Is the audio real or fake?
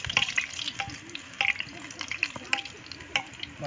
real